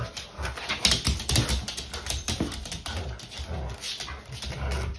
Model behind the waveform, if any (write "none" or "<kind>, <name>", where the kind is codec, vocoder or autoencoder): none